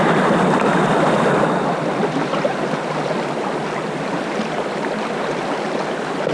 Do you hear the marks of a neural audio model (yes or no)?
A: no